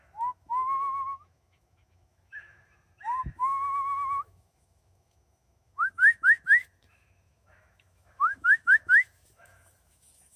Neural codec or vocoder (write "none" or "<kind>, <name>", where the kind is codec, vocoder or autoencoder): autoencoder, DAC-VAE